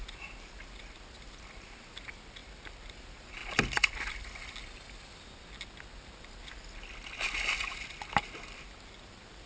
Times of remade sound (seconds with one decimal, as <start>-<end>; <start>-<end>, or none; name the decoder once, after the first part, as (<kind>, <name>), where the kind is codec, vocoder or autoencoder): none

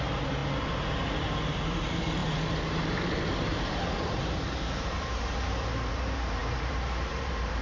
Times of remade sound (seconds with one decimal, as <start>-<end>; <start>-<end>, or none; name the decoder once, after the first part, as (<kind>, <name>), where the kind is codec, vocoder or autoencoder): 0.0-0.4 (vocoder, BigVGAN v2); 1.1-7.6